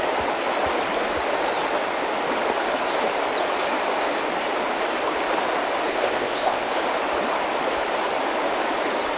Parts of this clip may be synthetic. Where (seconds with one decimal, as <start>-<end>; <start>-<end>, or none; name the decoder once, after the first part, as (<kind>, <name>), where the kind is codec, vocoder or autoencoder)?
5.9-6.7 (codec, ZipCodec)